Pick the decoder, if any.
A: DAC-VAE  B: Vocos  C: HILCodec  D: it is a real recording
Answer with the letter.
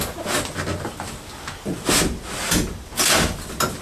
D